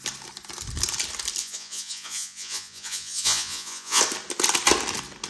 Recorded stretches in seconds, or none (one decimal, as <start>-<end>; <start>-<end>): 0.0-1.4; 4.0-5.3